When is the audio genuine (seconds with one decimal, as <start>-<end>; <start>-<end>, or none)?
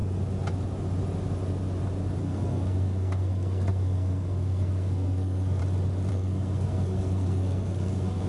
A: 0.0-2.2; 5.6-6.1